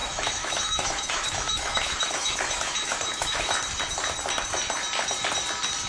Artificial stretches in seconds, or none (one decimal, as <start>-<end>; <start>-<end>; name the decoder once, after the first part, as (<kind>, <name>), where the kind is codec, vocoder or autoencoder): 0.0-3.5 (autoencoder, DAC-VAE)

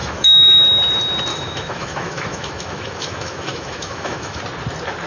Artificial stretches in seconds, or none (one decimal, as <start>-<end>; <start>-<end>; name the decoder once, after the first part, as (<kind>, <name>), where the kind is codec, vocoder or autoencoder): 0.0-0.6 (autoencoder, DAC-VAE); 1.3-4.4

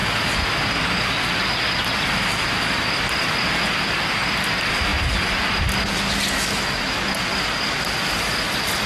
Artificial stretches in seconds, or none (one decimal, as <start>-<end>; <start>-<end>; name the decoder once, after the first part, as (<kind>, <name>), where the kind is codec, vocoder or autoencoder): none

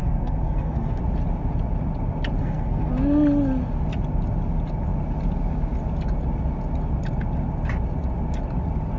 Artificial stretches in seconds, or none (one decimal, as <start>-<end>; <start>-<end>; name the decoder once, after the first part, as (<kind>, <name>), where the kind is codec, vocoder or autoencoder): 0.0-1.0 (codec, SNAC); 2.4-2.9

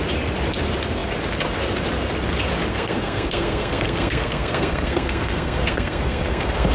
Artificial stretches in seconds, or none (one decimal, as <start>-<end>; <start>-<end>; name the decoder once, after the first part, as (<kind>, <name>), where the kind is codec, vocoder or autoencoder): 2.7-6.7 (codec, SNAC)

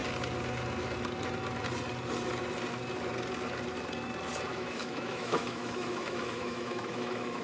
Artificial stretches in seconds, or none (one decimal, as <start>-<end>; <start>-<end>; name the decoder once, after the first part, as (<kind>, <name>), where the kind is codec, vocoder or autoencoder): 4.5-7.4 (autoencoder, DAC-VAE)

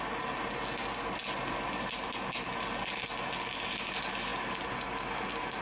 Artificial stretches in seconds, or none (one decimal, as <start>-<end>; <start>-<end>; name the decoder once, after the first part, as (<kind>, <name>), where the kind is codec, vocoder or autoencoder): none